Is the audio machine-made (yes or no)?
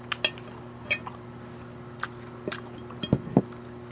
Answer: no